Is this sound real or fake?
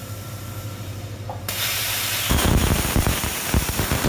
fake